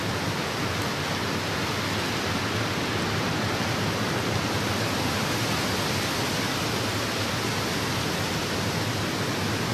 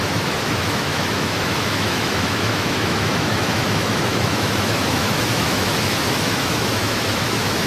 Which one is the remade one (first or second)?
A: second